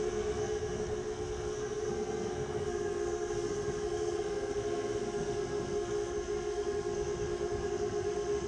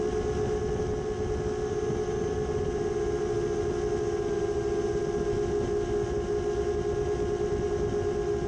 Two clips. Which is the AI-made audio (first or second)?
first